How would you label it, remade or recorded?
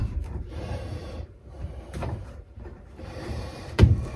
remade